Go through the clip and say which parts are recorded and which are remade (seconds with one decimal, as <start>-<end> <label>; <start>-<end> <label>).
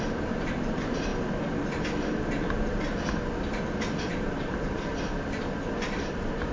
0.0-1.1 remade; 1.1-3.8 recorded; 3.8-4.9 remade; 4.9-5.6 recorded; 5.6-6.5 remade